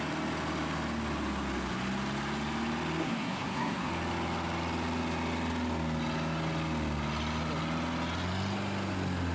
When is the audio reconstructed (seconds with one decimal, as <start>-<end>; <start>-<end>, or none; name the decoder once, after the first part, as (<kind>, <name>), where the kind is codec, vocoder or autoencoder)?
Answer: 3.0-3.9 (codec, SNAC)